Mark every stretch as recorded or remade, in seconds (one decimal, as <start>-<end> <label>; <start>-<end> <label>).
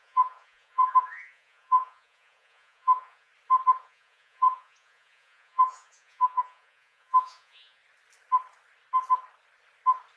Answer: 0.0-3.3 remade; 3.3-3.8 recorded; 3.8-7.8 remade; 7.8-10.2 recorded